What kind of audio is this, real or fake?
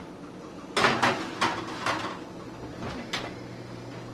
real